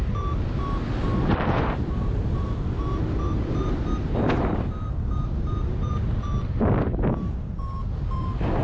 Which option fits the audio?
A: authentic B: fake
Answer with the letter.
A